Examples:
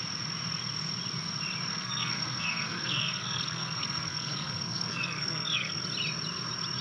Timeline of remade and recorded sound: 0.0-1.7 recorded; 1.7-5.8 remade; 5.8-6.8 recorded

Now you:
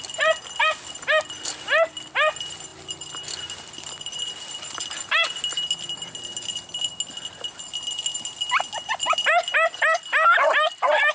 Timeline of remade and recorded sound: 0.0-11.1 recorded